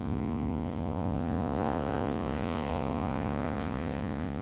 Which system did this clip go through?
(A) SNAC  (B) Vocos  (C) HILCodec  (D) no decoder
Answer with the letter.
B